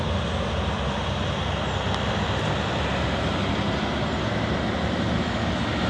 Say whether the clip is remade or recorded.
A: recorded